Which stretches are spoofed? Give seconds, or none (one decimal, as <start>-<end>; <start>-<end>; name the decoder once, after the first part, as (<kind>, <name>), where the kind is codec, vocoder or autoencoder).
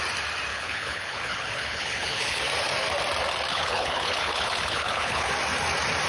0.5-2.4 (codec, HILCodec); 3.5-5.3